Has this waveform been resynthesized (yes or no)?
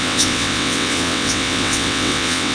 yes